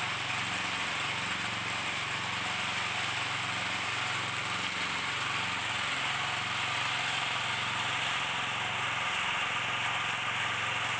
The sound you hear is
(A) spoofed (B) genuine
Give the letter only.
B